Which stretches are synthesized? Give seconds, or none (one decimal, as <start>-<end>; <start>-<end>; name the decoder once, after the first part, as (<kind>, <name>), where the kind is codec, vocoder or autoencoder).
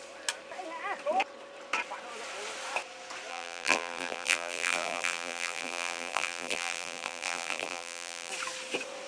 3.3-8.3 (vocoder, BigVGAN v2)